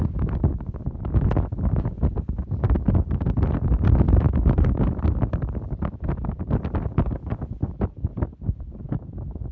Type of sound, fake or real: real